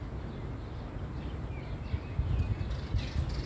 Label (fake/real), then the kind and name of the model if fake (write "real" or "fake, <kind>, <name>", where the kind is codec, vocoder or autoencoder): real